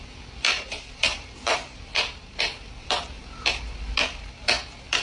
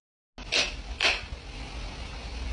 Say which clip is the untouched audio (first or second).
second